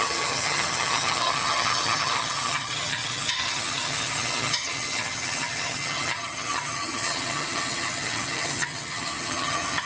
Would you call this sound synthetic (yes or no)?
yes